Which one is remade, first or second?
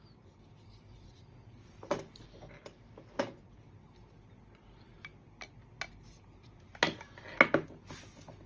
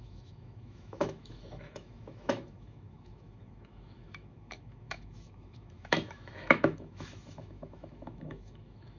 second